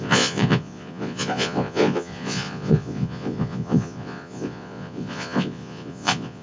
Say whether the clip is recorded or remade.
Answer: remade